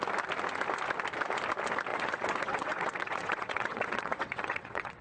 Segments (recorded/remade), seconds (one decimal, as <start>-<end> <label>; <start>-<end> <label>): 0.0-1.9 recorded; 1.9-5.0 remade